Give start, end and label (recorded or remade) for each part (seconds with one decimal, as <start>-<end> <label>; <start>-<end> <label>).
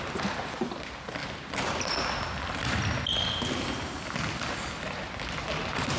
0.0-6.0 recorded